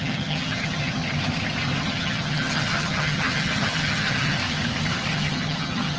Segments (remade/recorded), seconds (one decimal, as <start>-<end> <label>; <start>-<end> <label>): 0.0-1.0 remade; 1.0-1.8 recorded; 1.8-4.4 remade; 4.4-5.1 recorded; 5.1-6.0 remade

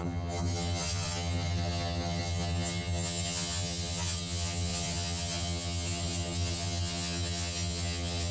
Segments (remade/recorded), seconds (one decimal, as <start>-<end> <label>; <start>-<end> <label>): 0.0-8.3 remade